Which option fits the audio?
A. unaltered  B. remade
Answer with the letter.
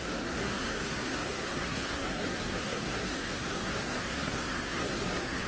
B